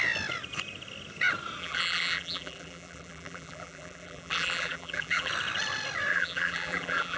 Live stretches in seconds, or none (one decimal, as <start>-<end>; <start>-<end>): 0.0-1.6; 5.3-6.1